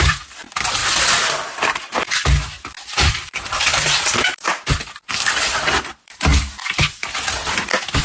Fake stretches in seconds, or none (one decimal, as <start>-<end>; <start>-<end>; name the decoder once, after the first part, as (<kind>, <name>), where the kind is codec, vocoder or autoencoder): 0.0-0.8 (vocoder, BigVGAN v2); 3.1-4.5; 5.8-6.3